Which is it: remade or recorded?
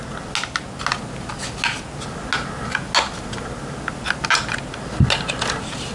recorded